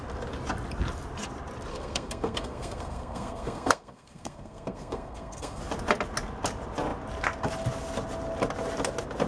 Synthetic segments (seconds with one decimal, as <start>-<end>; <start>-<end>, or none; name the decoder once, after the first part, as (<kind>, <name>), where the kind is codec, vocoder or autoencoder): 1.7-5.6 (codec, SNAC)